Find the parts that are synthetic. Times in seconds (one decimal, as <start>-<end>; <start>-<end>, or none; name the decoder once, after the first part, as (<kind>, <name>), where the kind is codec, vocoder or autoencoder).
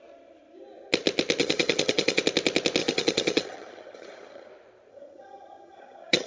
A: 1.4-2.2 (vocoder, HiFi-GAN); 2.8-4.5; 4.9-6.3